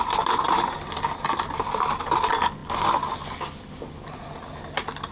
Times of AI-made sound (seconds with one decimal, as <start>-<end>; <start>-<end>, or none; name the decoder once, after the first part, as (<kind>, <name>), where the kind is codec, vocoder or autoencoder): none